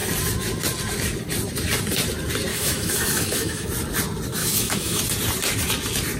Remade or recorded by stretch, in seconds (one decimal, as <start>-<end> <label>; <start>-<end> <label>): 0.0-2.5 recorded; 2.5-3.7 remade; 3.7-4.4 recorded; 4.4-5.0 remade; 5.0-6.2 recorded